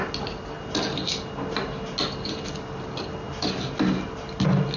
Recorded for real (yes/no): yes